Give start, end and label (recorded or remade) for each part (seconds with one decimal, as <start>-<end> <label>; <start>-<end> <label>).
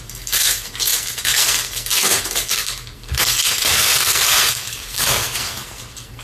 0.0-6.2 remade